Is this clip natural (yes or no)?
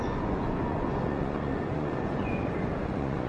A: no